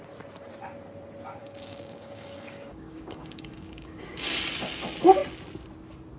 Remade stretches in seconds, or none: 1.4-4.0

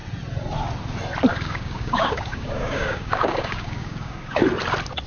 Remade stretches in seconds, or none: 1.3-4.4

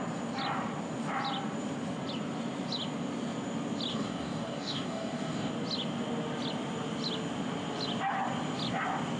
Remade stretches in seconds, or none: 3.9-5.5

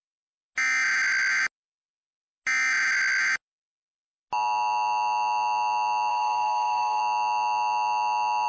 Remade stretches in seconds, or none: 6.1-7.0